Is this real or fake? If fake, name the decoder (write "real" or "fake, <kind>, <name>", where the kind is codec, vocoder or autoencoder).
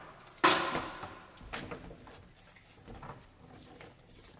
real